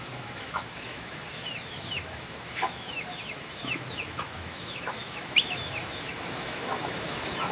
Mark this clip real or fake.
fake